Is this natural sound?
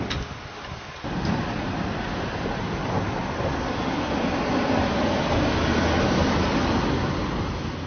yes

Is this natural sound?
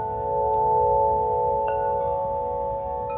no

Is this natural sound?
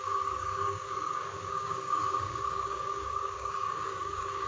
no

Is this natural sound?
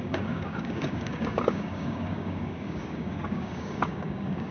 no